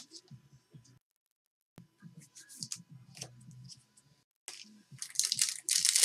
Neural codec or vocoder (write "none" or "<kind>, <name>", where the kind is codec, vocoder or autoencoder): none